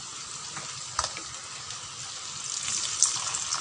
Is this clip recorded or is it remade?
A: recorded